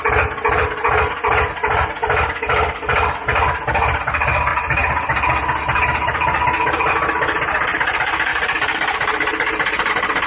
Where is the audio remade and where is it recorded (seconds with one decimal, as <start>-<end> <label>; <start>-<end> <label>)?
0.0-4.5 recorded; 4.5-6.9 remade; 6.9-8.3 recorded; 8.3-9.9 remade; 9.9-10.3 recorded